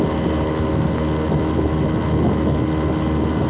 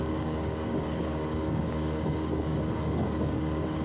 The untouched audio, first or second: first